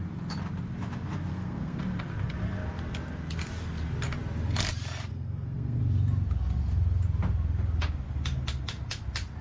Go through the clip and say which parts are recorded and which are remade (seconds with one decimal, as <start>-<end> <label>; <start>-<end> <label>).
0.0-1.3 recorded; 1.3-1.8 remade; 1.8-5.1 recorded; 5.1-5.8 remade; 5.8-9.4 recorded